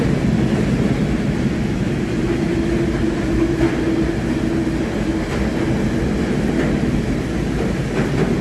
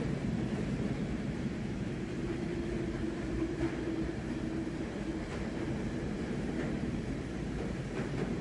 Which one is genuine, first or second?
first